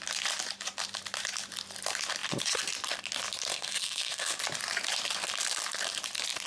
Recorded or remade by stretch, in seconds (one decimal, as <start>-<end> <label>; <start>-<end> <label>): 0.0-3.5 recorded; 3.5-4.4 remade; 4.4-6.5 recorded